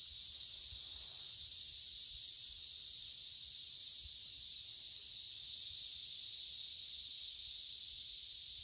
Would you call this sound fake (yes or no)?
no